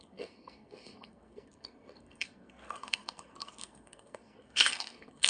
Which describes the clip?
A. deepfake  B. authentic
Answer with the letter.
A